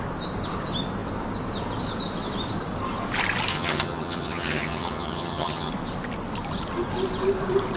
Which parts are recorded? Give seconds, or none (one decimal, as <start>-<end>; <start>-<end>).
0.0-3.5; 5.7-7.8